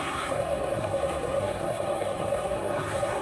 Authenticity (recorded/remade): remade